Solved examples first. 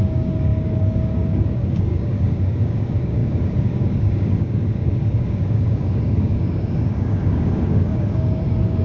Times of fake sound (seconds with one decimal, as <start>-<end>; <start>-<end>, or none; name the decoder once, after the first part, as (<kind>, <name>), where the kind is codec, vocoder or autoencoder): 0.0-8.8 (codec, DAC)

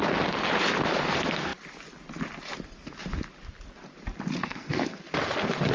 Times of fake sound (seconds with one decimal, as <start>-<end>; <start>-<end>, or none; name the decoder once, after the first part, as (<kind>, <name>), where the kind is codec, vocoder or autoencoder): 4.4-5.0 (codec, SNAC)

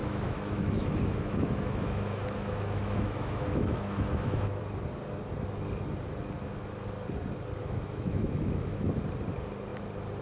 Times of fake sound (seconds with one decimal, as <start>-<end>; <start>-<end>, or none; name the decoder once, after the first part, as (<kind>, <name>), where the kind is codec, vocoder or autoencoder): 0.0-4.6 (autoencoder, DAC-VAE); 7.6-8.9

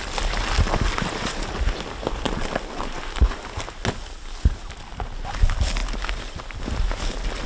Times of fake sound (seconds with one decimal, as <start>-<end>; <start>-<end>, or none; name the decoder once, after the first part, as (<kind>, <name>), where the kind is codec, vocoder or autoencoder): none

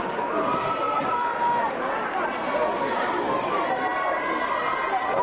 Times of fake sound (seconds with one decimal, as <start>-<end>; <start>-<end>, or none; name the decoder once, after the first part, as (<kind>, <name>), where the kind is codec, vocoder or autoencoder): 3.9-4.5 (vocoder, BigVGAN v2)